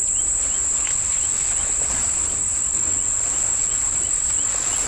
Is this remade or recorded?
recorded